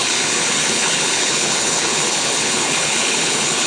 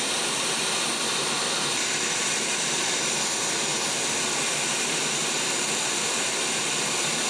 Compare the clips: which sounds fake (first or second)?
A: first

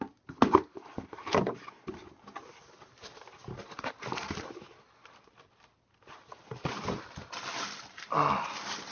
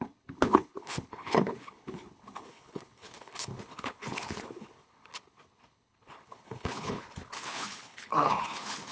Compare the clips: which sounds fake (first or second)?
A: second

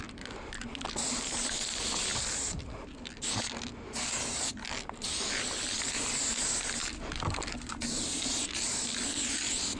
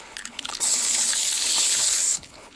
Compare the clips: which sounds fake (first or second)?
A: second